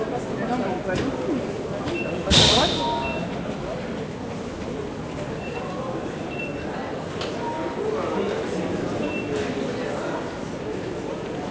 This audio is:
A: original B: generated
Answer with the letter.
A